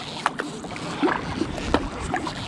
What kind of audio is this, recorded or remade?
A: recorded